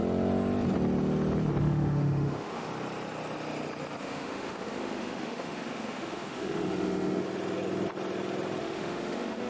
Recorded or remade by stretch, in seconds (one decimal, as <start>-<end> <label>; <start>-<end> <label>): 0.0-1.6 recorded; 1.6-2.7 remade; 2.7-4.0 recorded; 4.0-7.2 remade; 7.2-8.6 recorded; 8.6-9.5 remade